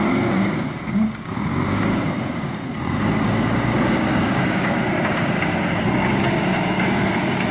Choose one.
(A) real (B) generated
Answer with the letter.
B